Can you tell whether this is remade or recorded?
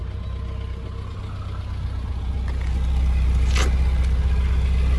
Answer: recorded